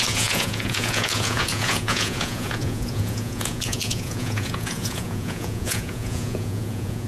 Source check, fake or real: fake